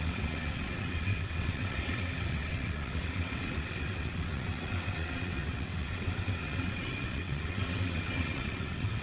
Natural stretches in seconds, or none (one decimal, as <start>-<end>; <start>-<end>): none